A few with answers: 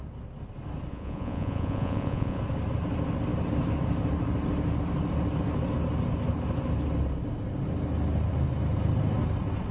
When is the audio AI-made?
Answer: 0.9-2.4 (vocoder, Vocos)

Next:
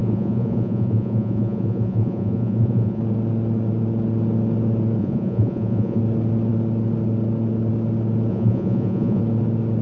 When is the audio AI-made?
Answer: 0.0-3.0 (vocoder, Vocos); 5.0-6.0; 8.3-9.2

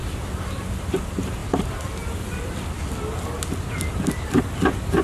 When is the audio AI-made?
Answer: none

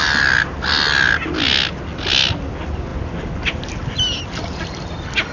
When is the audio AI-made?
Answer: none

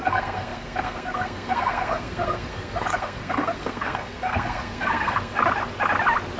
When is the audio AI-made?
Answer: 0.0-5.4 (codec, SNAC)

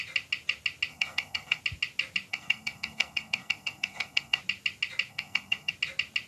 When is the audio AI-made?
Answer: 0.9-1.6 (codec, SNAC); 2.3-4.4; 5.1-5.7